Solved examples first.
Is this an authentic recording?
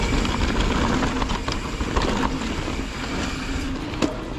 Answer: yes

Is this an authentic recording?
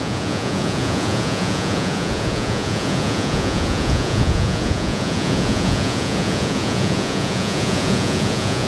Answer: no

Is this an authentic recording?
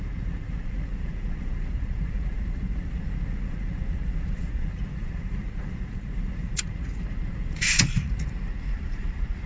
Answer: no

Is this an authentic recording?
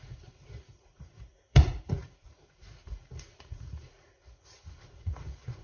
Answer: no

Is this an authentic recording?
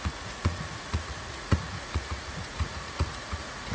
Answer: no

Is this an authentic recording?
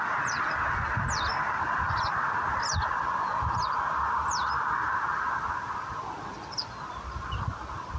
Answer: yes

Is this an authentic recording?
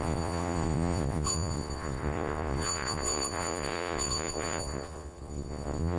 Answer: no